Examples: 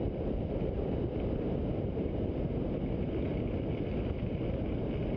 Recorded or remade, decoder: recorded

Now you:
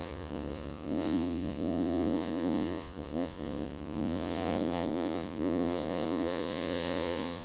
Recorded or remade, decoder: remade, vocoder, Vocos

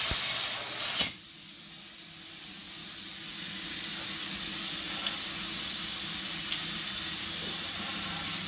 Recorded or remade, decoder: recorded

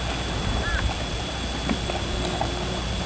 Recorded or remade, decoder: remade, vocoder, BigVGAN v2